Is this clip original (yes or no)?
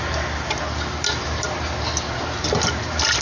yes